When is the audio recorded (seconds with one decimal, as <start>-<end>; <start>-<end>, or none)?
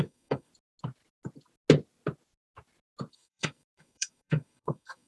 0.5-3.1